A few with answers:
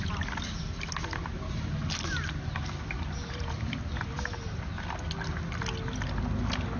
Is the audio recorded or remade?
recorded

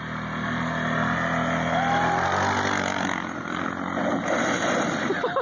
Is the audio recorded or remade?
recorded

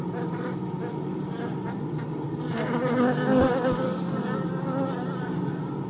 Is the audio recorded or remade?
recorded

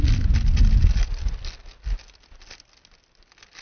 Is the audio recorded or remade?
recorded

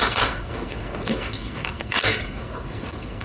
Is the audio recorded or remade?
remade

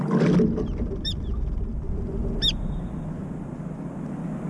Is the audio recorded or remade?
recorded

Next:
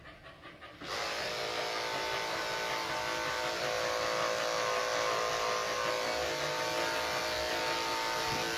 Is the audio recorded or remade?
recorded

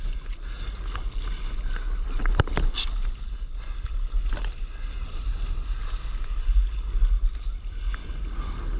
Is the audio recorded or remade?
recorded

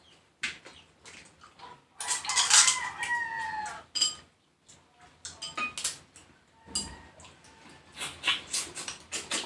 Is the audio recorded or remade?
recorded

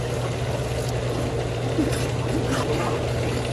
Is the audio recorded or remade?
recorded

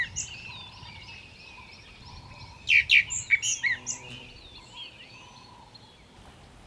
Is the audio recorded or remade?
recorded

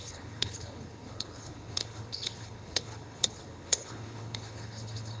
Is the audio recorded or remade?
remade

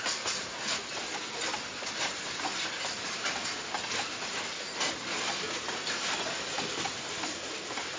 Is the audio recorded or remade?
recorded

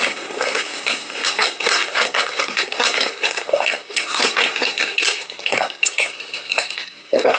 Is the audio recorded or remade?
remade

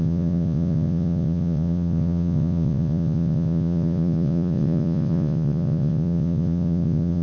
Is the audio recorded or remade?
remade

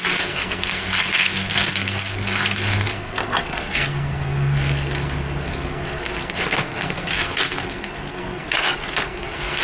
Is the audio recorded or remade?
remade